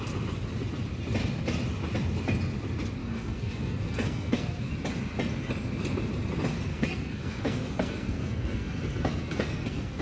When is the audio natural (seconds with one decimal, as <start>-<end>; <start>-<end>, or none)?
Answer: 0.0-3.0; 4.7-6.7